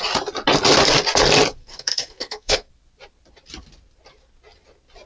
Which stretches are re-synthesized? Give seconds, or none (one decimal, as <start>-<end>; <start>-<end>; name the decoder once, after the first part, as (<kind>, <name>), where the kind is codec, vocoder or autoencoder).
1.6-2.7 (codec, SNAC)